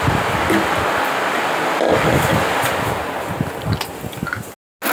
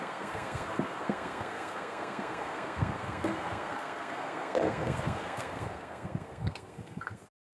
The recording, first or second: first